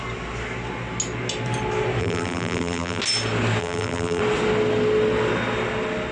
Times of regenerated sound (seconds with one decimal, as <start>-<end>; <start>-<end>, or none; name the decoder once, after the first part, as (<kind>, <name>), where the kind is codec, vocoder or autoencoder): 2.0-3.0 (vocoder, BigVGAN v2); 3.6-4.2